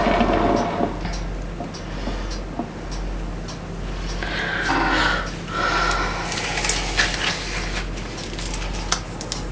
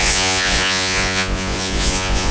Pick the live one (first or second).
first